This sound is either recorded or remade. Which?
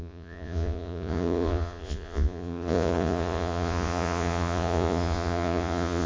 remade